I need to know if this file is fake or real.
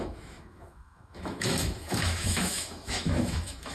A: fake